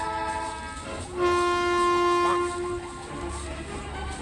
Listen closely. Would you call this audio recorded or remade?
recorded